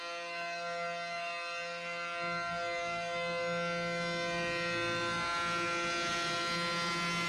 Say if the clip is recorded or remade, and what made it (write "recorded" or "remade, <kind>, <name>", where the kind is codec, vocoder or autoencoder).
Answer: recorded